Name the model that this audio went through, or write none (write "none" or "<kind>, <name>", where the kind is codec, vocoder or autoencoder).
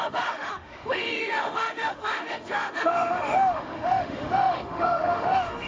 autoencoder, DAC-VAE